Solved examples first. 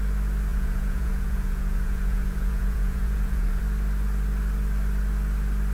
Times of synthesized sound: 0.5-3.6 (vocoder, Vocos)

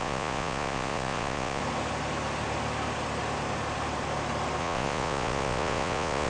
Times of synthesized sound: 0.0-1.6 (vocoder, Vocos); 4.6-6.3

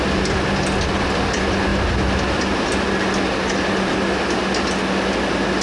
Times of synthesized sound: none

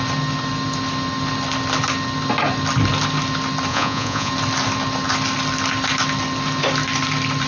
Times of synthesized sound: 3.7-4.3 (vocoder, Vocos)

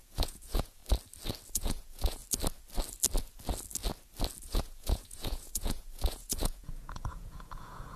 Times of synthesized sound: 0.0-0.8 (vocoder, Vocos); 1.5-2.2; 4.4-8.0

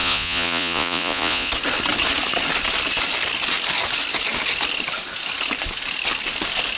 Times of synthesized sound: 0.0-1.5 (vocoder, Vocos)

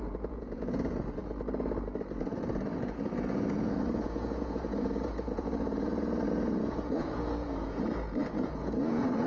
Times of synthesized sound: 0.0-1.2 (vocoder, Vocos); 2.2-9.3